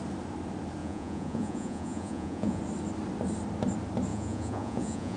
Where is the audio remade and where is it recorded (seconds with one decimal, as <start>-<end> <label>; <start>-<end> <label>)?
0.0-0.8 recorded; 0.8-2.6 remade; 2.6-4.1 recorded; 4.1-5.2 remade